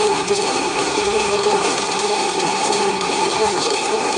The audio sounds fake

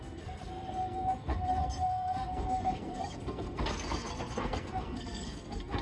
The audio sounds fake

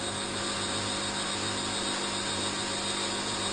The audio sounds real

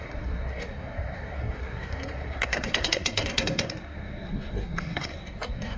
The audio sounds fake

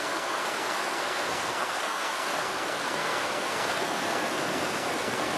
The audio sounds fake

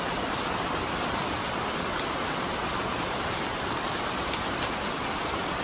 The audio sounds real